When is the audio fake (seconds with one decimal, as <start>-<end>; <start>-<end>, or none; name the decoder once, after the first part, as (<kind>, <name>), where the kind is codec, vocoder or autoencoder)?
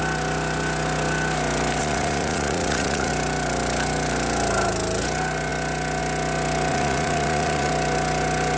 1.8-3.1 (vocoder, Vocos); 6.7-7.7